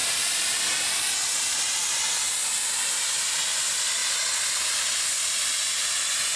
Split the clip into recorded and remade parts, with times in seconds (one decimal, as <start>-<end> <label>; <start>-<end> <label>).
0.0-6.4 recorded